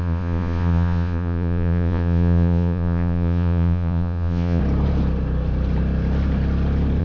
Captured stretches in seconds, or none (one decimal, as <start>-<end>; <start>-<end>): 4.6-7.0